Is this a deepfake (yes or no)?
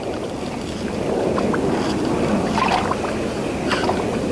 no